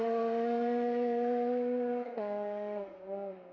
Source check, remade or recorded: remade